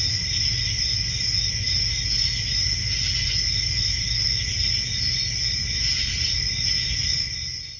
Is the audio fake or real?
real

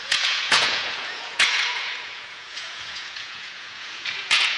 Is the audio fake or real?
fake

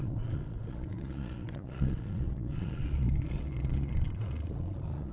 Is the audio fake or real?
fake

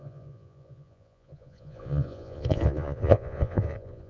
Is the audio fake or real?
fake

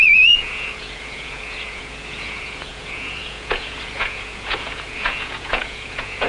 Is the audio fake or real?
fake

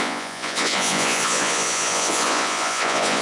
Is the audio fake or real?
fake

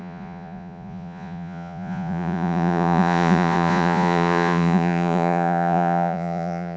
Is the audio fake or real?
fake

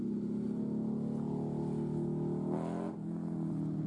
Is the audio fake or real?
real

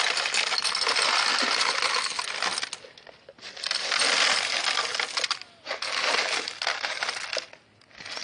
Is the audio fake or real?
real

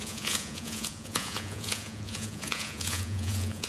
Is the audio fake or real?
fake